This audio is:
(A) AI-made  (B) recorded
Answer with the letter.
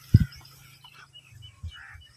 B